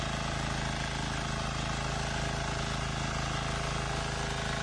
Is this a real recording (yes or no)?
yes